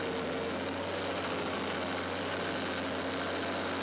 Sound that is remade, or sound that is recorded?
recorded